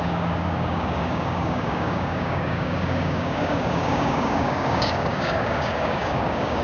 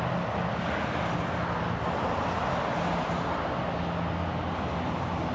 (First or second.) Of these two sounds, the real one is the second